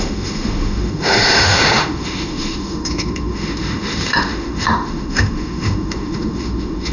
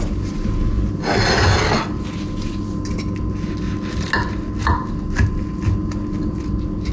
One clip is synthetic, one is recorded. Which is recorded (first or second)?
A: second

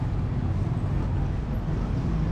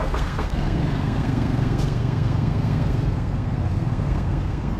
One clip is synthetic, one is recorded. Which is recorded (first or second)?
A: first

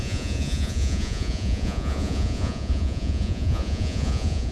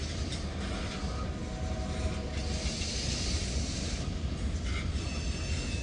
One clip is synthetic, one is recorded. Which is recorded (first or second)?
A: second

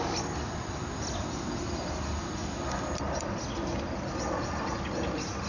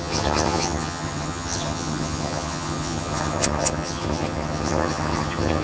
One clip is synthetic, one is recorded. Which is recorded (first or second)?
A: first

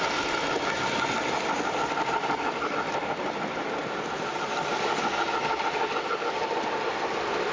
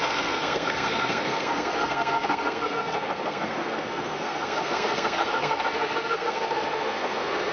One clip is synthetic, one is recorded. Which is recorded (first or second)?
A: first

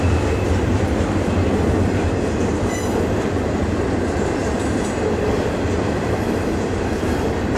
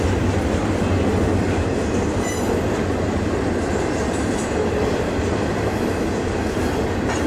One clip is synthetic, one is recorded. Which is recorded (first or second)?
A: second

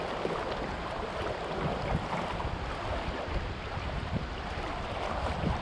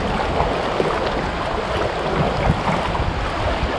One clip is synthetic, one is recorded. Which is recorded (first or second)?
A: second